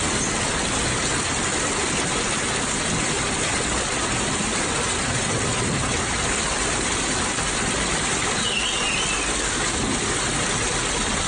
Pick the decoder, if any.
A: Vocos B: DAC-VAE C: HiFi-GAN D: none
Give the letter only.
D